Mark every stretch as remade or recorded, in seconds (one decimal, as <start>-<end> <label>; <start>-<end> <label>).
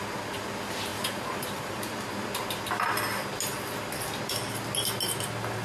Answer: 0.0-5.6 recorded